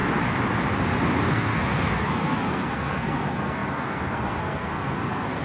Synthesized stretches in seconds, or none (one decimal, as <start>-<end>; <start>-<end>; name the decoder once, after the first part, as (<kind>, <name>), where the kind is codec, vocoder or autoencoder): 1.3-5.4 (codec, SNAC)